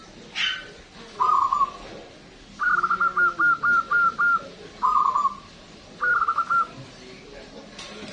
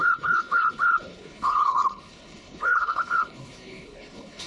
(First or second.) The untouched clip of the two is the first